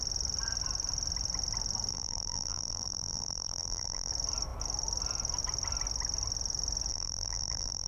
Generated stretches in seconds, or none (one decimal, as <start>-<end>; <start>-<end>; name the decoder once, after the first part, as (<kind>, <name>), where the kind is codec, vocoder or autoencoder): 1.9-4.1 (vocoder, BigVGAN v2); 6.9-7.9